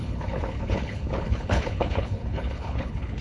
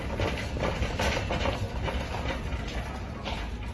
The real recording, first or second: second